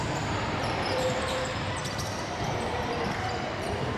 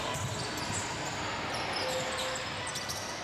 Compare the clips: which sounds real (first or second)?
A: second